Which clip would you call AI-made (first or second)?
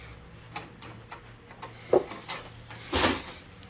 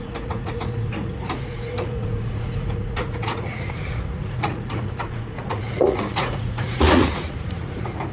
second